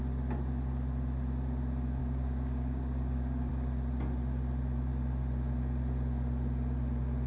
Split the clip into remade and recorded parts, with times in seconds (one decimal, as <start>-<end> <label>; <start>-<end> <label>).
0.0-2.0 recorded; 2.0-3.5 remade; 3.5-7.3 recorded